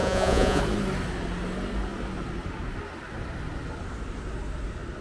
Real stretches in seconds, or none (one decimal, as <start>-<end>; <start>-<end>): 0.6-5.0